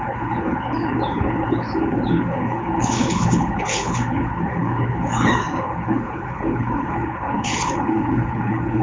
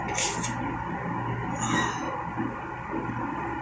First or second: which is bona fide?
second